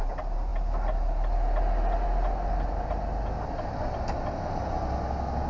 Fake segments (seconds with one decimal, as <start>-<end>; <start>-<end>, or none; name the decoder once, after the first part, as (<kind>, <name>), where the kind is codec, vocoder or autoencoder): none